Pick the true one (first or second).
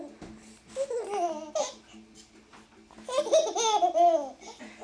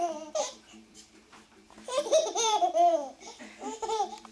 first